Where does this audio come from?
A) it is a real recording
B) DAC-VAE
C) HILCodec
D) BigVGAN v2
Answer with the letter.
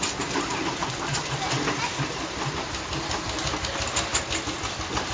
A